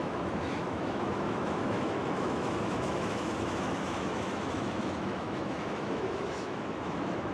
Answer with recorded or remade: remade